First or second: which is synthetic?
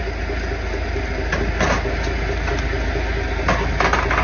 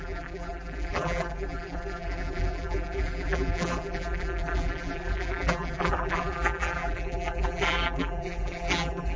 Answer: second